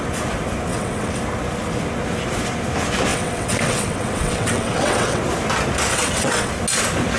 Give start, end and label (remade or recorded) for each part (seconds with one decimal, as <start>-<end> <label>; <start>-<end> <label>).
0.0-0.7 recorded; 0.7-1.2 remade; 1.2-3.1 recorded; 3.1-5.2 remade; 5.2-5.9 recorded; 5.9-6.5 remade; 6.5-7.2 recorded